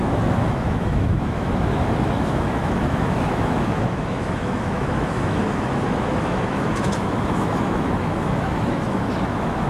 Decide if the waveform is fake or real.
fake